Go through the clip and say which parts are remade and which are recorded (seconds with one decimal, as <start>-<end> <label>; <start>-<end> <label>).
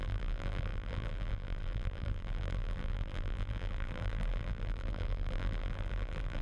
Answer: 0.0-6.4 remade